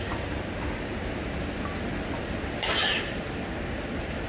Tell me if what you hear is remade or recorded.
recorded